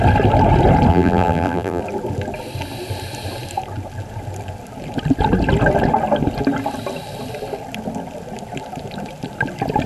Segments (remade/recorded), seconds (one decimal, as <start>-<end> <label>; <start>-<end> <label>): 0.0-0.9 recorded; 0.9-1.8 remade; 1.8-9.9 recorded